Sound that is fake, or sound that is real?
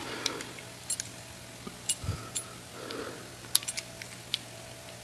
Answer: real